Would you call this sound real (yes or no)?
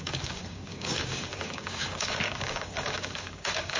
no